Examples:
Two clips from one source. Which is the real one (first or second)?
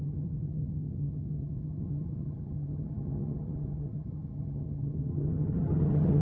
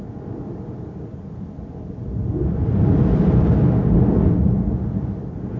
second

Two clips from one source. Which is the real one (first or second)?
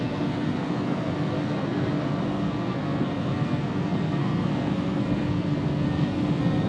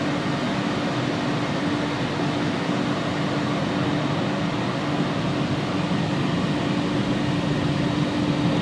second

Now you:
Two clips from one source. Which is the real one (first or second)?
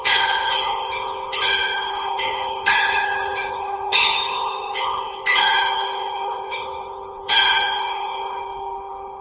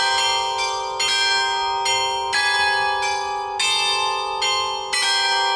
second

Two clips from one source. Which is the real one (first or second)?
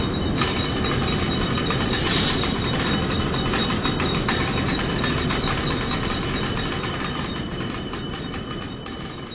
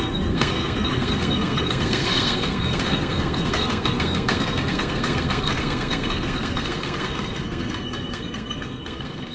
first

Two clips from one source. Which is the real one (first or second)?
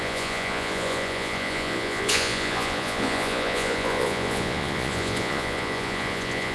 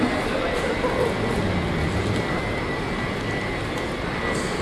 second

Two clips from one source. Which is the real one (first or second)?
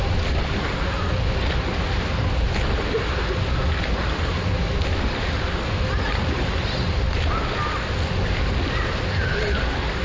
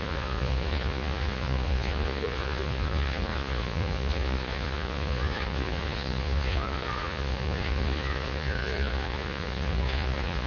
first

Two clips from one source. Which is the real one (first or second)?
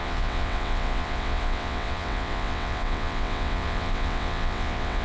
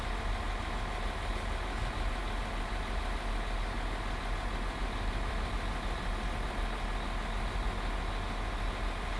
second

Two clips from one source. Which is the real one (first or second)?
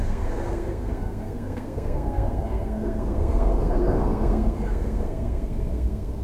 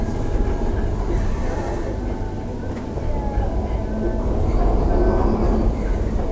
second